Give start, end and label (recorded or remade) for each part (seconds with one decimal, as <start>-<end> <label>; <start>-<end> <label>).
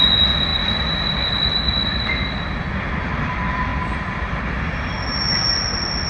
0.0-0.5 recorded; 0.5-2.6 remade; 2.6-3.7 recorded; 3.7-4.4 remade; 4.4-6.1 recorded